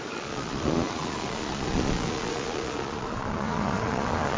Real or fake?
fake